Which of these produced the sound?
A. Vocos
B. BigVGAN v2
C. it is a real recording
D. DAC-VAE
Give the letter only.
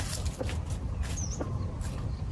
C